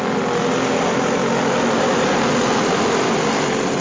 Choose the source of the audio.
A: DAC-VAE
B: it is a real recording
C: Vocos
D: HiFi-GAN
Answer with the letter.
B